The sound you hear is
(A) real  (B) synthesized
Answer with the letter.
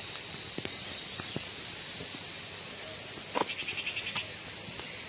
A